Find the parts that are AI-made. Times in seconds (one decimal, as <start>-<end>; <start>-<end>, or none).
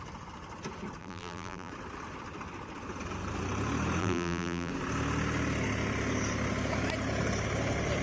1.0-1.7; 4.0-4.7